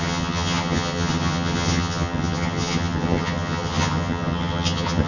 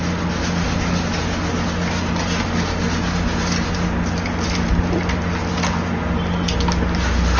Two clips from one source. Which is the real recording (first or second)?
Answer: second